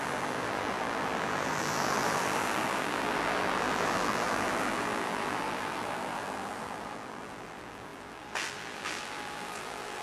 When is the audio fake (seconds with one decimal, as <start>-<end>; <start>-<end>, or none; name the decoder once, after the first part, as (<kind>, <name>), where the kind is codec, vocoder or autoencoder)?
0.0-10.0 (vocoder, BigVGAN v2)